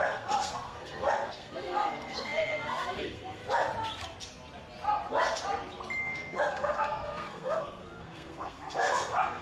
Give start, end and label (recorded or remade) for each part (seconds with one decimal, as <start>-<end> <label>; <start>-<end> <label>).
0.0-3.4 remade; 3.4-6.0 recorded; 6.0-9.4 remade